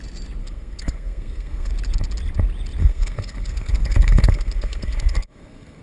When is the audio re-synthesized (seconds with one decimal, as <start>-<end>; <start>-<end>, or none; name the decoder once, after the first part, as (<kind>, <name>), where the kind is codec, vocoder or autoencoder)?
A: 0.4-1.7 (codec, SNAC); 2.8-5.8